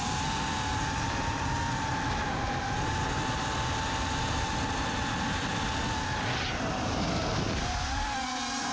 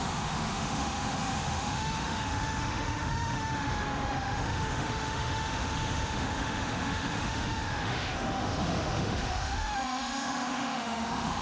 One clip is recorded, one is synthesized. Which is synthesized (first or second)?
second